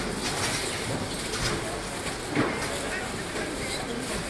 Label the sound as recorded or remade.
recorded